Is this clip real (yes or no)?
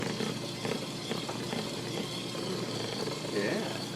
no